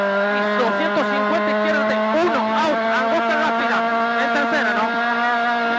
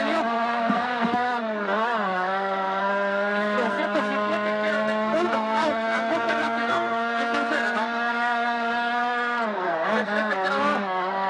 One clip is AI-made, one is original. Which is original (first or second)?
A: first